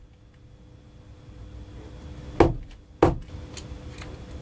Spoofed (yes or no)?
no